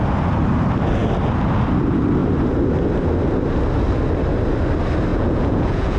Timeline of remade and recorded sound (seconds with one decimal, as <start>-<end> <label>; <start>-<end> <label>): 0.0-5.1 recorded; 5.1-6.0 remade